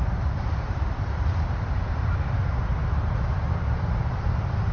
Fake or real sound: real